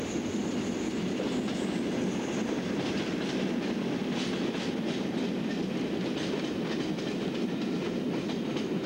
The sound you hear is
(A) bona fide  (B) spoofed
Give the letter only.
A